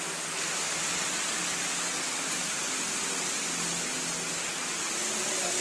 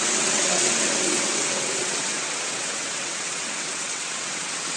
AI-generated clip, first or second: second